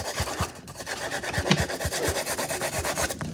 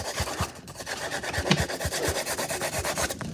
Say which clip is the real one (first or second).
first